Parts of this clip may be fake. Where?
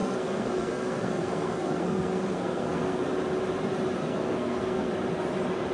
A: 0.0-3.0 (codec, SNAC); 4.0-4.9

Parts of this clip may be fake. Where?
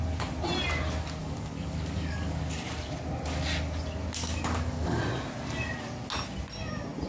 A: 1.2-2.4 (codec, DAC); 4.2-5.0